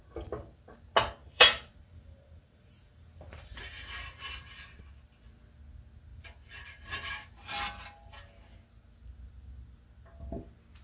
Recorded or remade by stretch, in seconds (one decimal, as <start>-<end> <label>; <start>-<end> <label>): 0.0-1.2 recorded; 1.2-4.3 remade; 4.3-6.1 recorded; 6.1-7.1 remade; 7.1-10.8 recorded